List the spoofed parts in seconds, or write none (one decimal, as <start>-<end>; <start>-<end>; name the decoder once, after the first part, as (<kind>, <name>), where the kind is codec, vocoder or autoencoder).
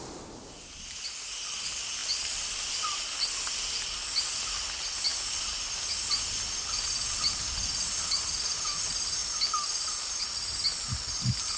none